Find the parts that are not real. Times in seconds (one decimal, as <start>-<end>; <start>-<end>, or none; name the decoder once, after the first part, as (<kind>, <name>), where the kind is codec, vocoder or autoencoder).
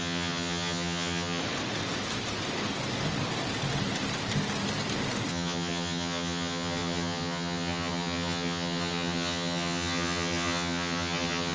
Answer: 0.0-1.4 (vocoder, HiFi-GAN); 5.3-11.5